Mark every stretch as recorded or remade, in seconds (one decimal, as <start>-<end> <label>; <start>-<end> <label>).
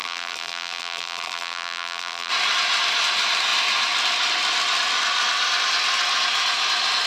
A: 0.0-2.3 remade; 2.3-7.1 recorded